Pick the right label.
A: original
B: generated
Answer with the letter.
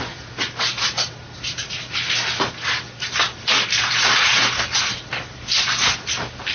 A